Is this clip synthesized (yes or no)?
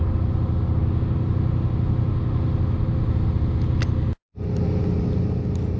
no